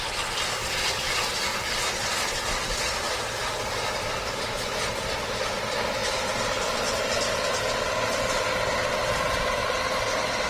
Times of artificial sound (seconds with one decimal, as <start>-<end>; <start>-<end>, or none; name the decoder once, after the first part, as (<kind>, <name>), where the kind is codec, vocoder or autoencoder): none